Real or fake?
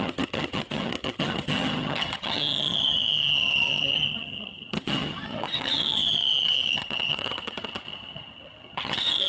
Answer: fake